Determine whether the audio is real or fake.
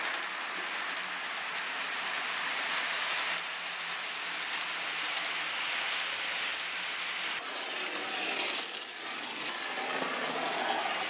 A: real